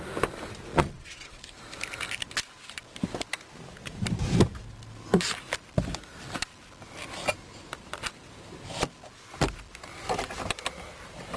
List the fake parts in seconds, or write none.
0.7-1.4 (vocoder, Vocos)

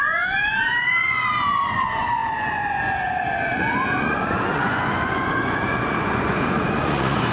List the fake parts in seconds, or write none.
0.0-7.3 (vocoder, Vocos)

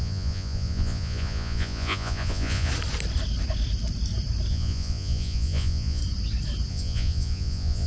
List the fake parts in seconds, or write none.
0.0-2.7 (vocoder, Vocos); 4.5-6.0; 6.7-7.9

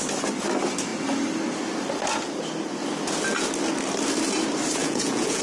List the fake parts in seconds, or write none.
4.8-5.4 (vocoder, Vocos)